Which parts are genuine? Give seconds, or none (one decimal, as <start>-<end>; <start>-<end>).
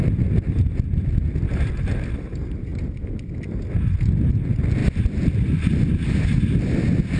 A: 0.0-7.2